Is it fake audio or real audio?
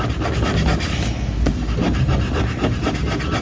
real